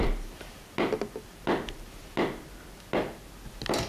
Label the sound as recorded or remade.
recorded